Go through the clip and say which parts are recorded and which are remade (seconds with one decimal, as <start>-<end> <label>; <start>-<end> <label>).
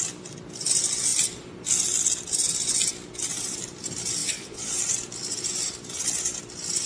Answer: 0.0-4.2 recorded; 4.2-4.8 remade; 4.8-6.9 recorded